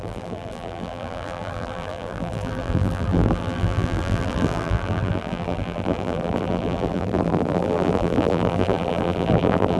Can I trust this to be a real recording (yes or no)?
no